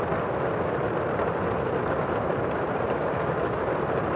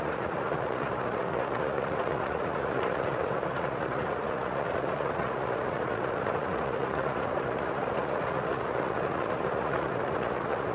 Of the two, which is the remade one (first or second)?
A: second